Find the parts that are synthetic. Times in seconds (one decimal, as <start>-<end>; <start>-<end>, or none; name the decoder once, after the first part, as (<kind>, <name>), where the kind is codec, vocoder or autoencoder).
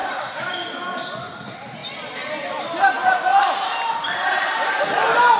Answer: 0.0-0.5 (vocoder, BigVGAN v2); 3.3-4.8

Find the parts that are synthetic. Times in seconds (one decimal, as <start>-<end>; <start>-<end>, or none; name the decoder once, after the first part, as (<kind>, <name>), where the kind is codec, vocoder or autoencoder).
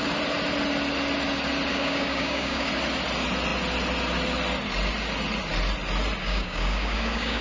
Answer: 1.7-2.7 (codec, DAC); 6.2-7.4